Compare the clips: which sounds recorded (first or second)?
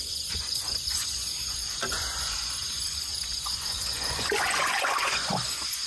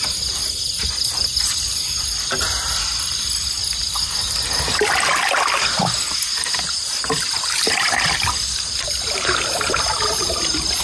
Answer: second